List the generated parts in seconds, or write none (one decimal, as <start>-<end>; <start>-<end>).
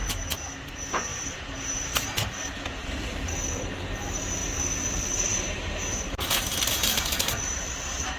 1.1-3.3; 4.4-7.3